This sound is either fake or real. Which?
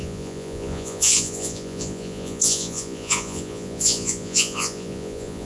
fake